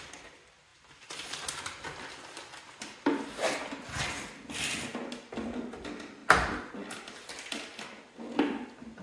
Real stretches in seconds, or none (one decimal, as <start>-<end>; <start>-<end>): 0.0-9.0